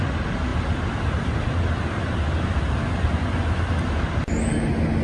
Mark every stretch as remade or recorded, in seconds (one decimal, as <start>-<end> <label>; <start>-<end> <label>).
0.0-5.0 recorded